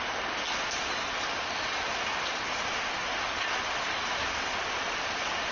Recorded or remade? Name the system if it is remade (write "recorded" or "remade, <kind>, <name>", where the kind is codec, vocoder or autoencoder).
recorded